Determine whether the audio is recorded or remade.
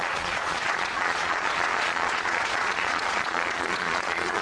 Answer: remade